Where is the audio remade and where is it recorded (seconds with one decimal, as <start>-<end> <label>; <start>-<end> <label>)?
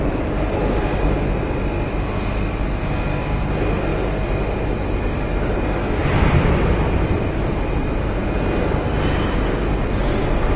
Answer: 0.0-6.0 recorded; 6.0-7.7 remade; 7.7-10.6 recorded